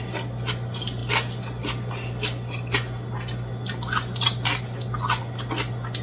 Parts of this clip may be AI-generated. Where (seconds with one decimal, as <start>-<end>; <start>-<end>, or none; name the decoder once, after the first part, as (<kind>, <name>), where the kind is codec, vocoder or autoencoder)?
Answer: none